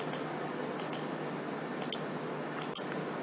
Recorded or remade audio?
recorded